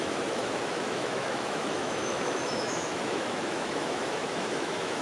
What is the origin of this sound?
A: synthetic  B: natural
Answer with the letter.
A